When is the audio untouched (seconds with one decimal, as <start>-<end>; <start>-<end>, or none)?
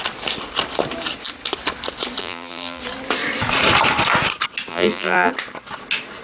0.0-2.2; 2.8-4.7; 5.3-6.2